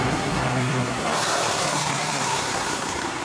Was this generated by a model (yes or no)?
yes